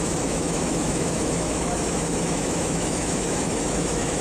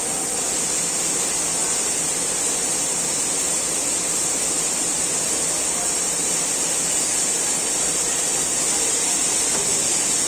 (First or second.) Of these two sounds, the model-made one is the first